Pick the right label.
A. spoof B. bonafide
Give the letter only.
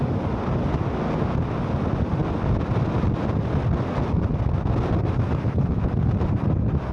B